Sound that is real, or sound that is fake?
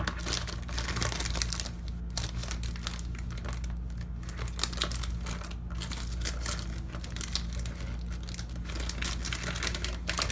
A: real